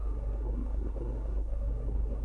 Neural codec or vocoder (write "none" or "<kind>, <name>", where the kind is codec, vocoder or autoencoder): codec, SNAC